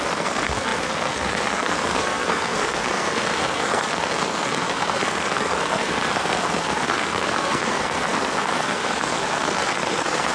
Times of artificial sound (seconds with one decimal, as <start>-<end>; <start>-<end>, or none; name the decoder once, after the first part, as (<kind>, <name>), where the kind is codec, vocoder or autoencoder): 0.0-10.3 (codec, SNAC)